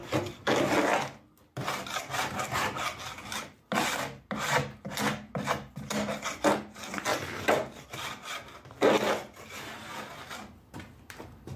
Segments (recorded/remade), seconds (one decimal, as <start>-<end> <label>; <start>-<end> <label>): 0.0-11.6 recorded